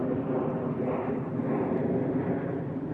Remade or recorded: recorded